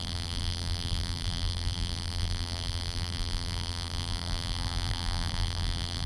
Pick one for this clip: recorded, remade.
remade